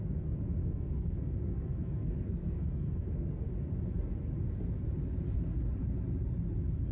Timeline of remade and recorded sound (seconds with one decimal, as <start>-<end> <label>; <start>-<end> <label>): 0.0-0.6 recorded; 0.6-3.4 remade; 3.4-6.9 recorded